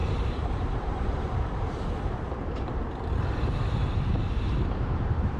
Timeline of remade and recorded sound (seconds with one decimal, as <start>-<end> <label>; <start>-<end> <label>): 0.0-5.4 remade